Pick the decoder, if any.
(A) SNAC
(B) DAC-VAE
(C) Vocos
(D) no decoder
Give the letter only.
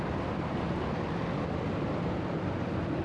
D